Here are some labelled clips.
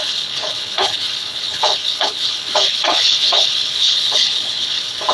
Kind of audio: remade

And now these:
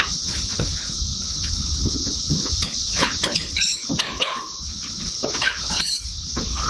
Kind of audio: remade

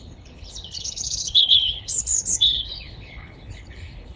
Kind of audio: remade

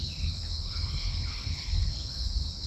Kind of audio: remade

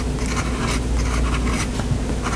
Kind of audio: recorded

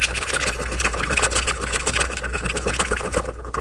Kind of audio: remade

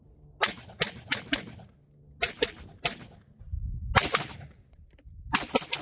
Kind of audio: recorded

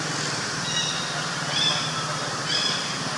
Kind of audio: recorded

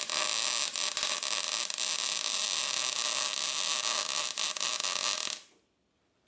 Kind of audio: recorded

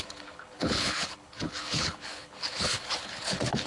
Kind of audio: remade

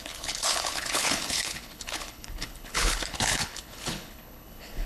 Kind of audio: remade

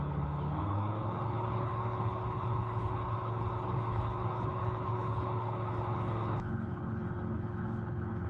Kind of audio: remade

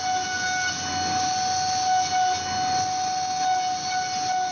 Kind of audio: recorded